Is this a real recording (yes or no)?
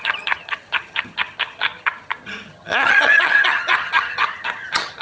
no